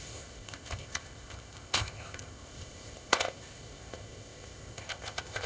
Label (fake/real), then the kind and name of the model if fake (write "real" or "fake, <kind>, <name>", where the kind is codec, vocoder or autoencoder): fake, codec, ZipCodec